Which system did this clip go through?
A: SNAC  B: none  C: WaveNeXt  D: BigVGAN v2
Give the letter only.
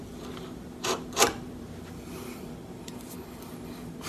D